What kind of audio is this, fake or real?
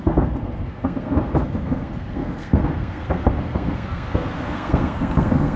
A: fake